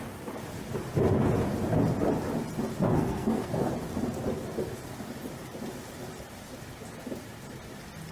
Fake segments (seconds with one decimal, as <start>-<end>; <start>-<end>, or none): 2.8-3.7